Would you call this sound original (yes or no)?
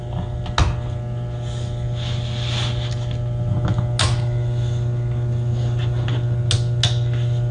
yes